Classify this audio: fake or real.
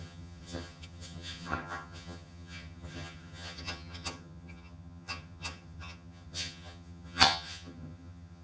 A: fake